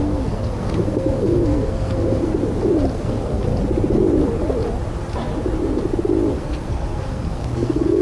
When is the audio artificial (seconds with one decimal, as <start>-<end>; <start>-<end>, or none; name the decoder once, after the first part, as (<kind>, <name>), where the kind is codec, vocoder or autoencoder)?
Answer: 0.0-2.3 (codec, SNAC); 2.9-3.5; 6.3-8.0